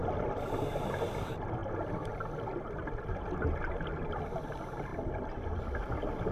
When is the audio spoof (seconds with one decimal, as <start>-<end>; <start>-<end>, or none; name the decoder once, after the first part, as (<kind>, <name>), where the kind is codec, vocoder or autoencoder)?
none